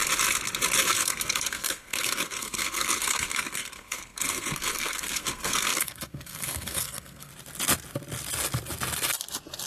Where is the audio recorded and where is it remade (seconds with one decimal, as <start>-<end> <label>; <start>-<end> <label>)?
0.0-0.8 recorded; 0.8-7.3 remade; 7.3-9.7 recorded